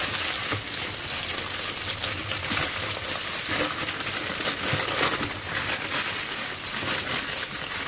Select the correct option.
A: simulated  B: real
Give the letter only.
B